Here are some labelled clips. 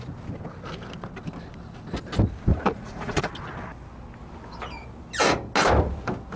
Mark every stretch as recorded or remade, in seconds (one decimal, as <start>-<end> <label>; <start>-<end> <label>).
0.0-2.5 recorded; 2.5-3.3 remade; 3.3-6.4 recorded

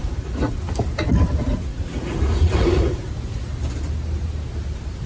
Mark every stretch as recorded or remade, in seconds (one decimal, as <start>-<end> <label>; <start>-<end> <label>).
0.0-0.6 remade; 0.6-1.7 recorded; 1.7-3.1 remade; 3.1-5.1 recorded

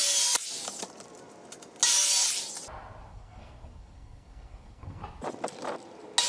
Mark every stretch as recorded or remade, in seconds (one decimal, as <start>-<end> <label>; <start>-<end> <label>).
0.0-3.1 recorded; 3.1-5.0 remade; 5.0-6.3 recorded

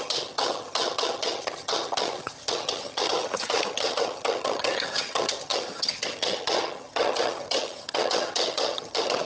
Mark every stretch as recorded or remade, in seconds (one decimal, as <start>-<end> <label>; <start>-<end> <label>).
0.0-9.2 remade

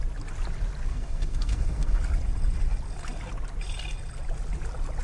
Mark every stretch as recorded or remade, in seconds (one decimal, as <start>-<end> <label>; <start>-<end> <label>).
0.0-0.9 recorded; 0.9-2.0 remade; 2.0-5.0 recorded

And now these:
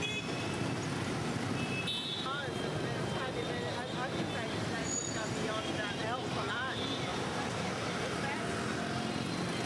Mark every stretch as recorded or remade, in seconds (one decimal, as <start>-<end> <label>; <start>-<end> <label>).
0.0-7.1 recorded; 7.1-8.5 remade; 8.5-9.7 recorded